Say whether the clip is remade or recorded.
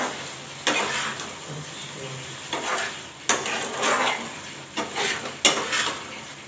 recorded